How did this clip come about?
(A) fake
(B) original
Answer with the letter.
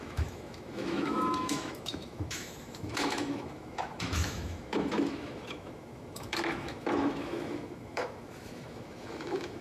A